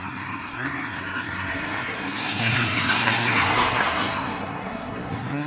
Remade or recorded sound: remade